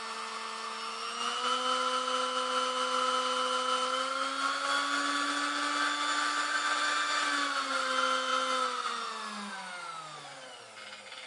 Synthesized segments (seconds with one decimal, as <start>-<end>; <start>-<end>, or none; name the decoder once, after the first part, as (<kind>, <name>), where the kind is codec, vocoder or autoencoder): 10.3-11.3 (vocoder, BigVGAN v2)